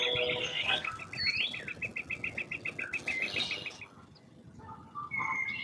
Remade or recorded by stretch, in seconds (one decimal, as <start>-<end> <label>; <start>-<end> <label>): 0.0-0.4 recorded; 0.4-1.0 remade; 1.0-5.6 recorded